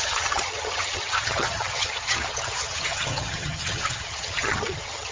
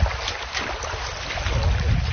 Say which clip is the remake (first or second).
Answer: first